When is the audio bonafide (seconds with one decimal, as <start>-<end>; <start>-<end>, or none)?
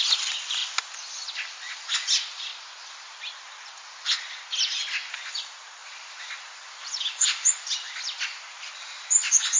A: 0.6-1.7; 2.5-5.1